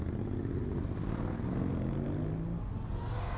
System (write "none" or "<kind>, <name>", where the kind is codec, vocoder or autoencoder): none